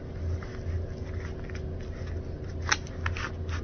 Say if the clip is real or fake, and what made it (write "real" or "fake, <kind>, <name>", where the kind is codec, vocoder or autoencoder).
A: real